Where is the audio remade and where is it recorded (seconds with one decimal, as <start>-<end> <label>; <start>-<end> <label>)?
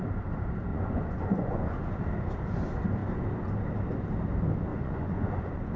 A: 0.0-0.7 recorded; 0.7-2.0 remade; 2.0-4.7 recorded; 4.7-5.8 remade